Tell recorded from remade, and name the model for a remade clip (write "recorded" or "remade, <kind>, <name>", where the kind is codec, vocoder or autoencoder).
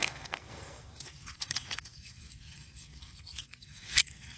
remade, codec, SNAC